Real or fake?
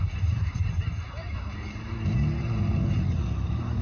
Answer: real